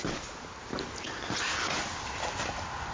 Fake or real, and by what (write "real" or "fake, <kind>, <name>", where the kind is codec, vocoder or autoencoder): real